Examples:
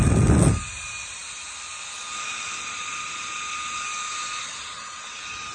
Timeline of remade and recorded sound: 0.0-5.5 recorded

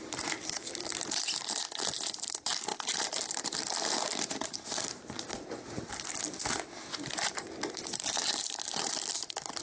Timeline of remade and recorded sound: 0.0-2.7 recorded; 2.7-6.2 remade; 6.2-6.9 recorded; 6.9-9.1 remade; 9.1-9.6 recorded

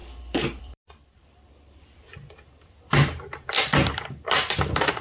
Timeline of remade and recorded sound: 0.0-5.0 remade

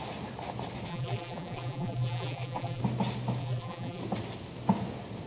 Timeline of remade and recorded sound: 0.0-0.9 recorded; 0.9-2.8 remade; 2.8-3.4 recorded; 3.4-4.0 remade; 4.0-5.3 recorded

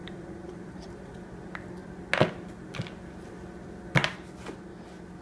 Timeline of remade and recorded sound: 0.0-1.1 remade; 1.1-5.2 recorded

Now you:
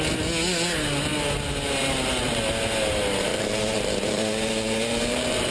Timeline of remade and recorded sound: 0.0-3.3 recorded; 3.3-5.5 remade

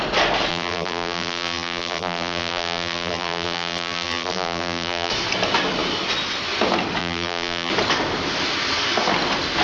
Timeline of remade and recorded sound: 0.0-0.5 recorded; 0.5-5.1 remade; 5.1-7.0 recorded; 7.0-7.7 remade; 7.7-9.6 recorded